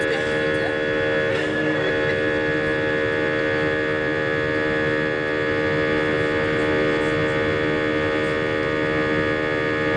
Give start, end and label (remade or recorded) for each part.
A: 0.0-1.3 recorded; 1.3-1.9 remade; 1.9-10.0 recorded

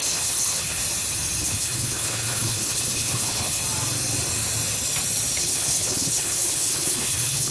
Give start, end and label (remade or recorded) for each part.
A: 0.0-0.8 remade; 0.8-1.4 recorded; 1.4-3.6 remade; 3.6-5.4 recorded; 5.4-7.5 remade

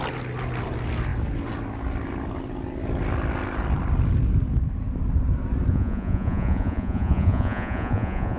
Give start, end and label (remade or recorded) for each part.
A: 0.0-5.7 recorded; 5.7-8.4 remade

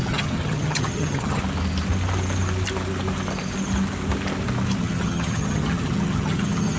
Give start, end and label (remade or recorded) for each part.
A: 0.0-1.4 remade; 1.4-4.8 recorded; 4.8-6.8 remade

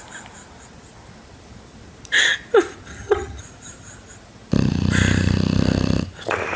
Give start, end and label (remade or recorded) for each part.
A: 0.0-2.9 recorded; 2.9-3.4 remade; 3.4-6.6 recorded

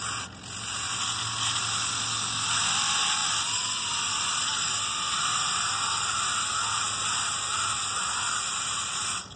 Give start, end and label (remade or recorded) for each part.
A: 0.0-9.4 recorded

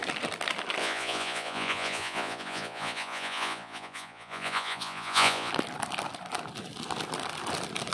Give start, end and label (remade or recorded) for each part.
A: 0.0-0.8 recorded; 0.8-5.5 remade; 5.5-7.9 recorded

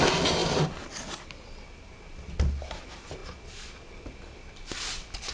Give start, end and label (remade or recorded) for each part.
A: 0.0-5.3 recorded